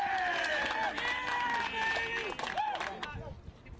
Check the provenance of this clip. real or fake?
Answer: real